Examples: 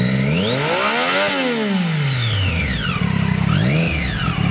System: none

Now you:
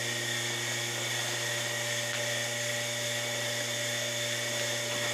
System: none